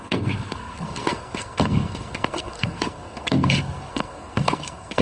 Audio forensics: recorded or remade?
remade